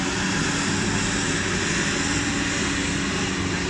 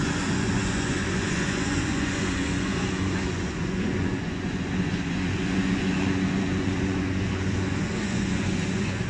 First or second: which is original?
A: first